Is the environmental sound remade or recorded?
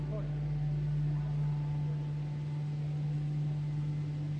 recorded